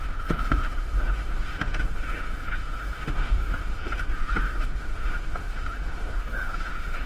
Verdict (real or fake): fake